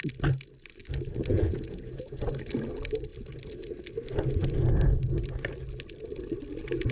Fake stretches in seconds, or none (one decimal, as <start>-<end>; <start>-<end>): 1.3-2.3